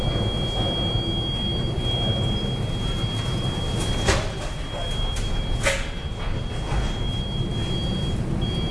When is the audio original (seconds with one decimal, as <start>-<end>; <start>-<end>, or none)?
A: 0.0-8.7